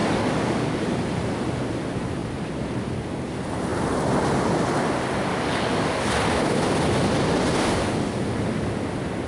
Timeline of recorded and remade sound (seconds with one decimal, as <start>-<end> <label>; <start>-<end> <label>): 0.0-1.0 remade; 1.0-5.3 recorded; 5.3-6.0 remade; 6.0-9.3 recorded